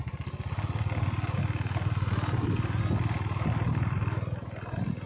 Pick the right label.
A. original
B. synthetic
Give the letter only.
A